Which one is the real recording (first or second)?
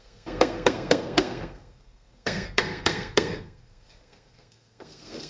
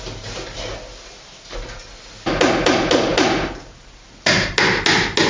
second